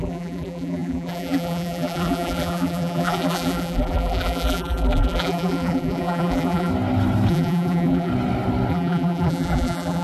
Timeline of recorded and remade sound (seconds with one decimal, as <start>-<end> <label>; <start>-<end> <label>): 0.0-6.7 remade; 6.7-7.3 recorded; 7.3-8.1 remade; 8.1-8.7 recorded; 8.7-10.0 remade